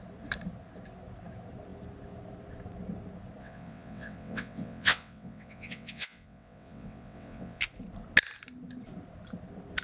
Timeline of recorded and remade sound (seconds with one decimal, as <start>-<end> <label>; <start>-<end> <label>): 0.0-3.4 recorded; 3.4-7.6 remade; 7.6-9.8 recorded